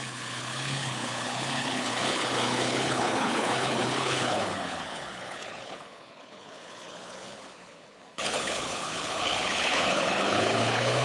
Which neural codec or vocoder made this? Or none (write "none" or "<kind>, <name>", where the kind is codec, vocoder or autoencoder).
codec, HILCodec